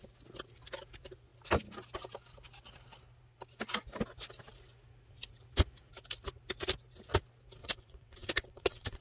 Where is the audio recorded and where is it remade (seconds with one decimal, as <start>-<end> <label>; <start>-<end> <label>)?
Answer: 0.0-7.6 recorded; 7.6-9.0 remade